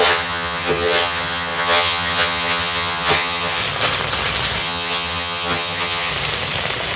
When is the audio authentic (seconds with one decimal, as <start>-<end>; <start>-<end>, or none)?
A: 3.6-4.6; 6.1-7.0